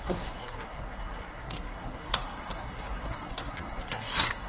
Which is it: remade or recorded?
remade